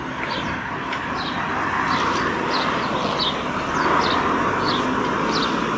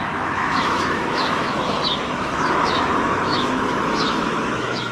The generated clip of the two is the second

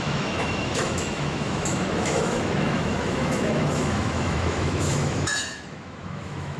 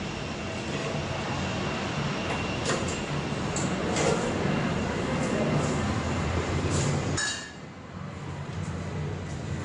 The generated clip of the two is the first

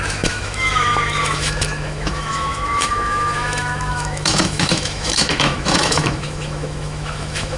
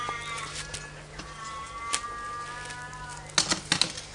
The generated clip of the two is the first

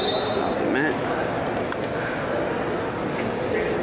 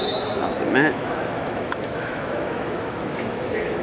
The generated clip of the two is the second